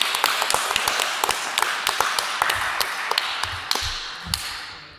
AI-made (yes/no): no